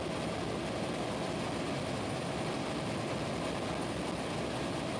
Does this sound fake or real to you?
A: real